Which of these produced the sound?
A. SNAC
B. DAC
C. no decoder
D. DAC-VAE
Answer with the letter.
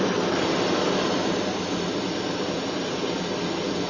C